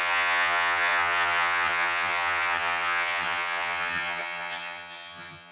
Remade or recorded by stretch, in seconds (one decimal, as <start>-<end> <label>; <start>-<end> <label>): 0.0-5.5 remade